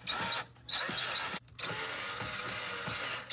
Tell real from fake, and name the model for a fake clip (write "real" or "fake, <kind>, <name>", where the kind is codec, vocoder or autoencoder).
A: real